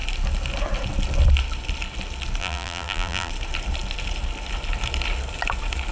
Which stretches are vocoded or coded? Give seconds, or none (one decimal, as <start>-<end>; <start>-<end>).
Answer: 2.4-3.3